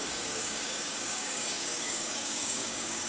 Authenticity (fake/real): fake